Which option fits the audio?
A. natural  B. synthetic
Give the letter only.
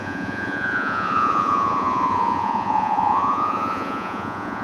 B